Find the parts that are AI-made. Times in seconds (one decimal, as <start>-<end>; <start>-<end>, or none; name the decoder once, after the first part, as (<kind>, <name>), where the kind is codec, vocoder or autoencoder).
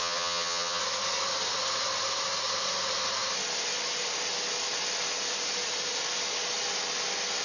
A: 0.0-0.8 (vocoder, HiFi-GAN)